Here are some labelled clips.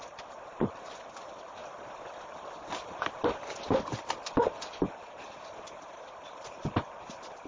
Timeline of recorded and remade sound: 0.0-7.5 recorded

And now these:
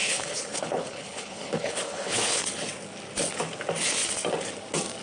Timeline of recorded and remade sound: 0.0-2.4 remade; 2.4-5.0 recorded

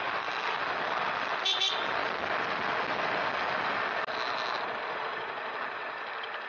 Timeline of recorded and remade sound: 0.0-6.5 recorded

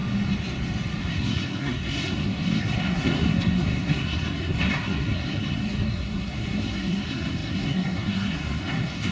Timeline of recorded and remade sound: 0.0-1.0 recorded; 1.0-9.1 remade

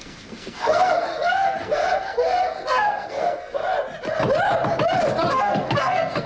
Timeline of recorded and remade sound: 0.0-3.6 remade; 3.6-5.3 recorded; 5.3-6.3 remade